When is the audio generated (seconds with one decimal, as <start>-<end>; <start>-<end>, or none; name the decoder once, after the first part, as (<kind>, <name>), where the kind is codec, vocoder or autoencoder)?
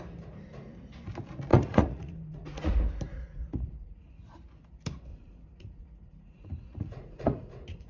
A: 1.5-2.7 (vocoder, Vocos); 3.1-4.0; 5.1-7.9